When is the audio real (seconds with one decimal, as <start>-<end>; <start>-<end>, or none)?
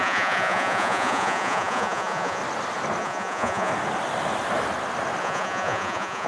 2.4-3.0; 3.7-5.2